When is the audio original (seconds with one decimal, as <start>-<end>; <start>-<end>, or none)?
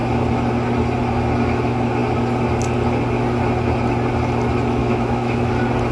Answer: 0.0-4.8; 5.5-5.9